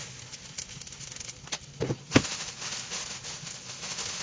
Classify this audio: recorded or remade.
recorded